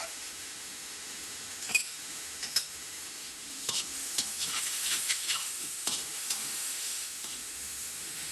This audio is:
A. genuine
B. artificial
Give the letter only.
B